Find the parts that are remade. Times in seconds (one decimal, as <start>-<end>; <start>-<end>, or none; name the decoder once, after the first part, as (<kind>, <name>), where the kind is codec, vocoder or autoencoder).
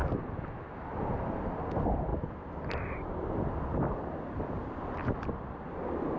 none